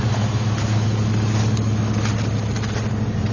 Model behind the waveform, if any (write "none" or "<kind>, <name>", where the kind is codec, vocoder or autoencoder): none